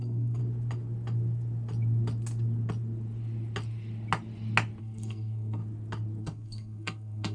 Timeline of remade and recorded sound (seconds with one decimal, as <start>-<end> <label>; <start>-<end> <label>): 0.0-0.4 remade; 0.4-4.8 recorded; 4.8-5.6 remade; 5.6-6.2 recorded; 6.2-7.3 remade